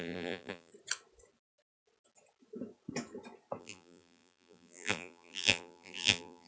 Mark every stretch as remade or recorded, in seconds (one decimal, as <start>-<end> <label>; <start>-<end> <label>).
0.0-0.7 remade; 0.7-3.6 recorded; 3.6-6.5 remade